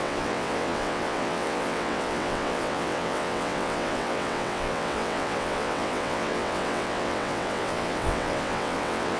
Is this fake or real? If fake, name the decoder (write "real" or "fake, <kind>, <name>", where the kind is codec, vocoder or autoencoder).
fake, vocoder, WaveNeXt